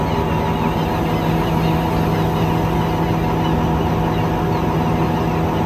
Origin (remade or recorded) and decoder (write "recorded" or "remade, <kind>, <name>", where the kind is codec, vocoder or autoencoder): recorded